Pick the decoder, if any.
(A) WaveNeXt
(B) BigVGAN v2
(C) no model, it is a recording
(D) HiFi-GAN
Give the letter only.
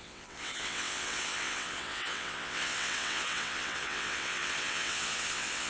A